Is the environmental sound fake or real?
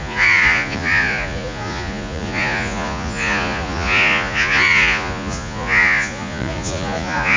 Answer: fake